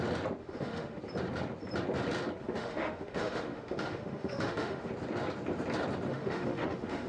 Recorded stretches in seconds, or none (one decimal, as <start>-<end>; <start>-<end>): 0.0-0.4; 1.0-2.4; 4.9-6.1